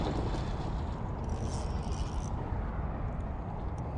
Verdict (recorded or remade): recorded